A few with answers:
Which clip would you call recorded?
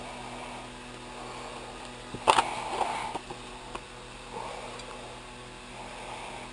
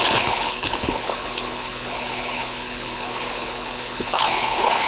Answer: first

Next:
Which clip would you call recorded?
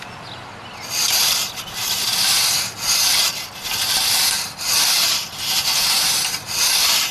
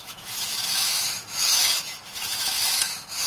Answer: first